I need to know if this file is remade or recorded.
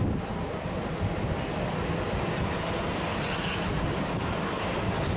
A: recorded